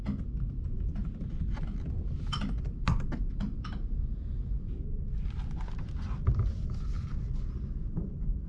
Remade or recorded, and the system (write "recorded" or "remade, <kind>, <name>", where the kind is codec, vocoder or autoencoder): recorded